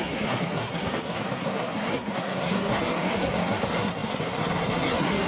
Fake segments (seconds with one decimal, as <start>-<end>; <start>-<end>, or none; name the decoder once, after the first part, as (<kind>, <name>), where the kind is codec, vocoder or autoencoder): 0.0-5.3 (codec, SNAC)